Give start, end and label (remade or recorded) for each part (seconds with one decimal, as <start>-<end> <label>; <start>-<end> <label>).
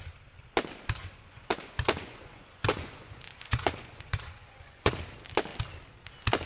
0.0-1.0 recorded; 1.0-4.9 remade; 4.9-6.5 recorded